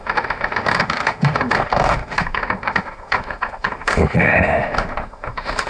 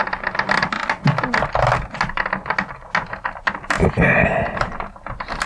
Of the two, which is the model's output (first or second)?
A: first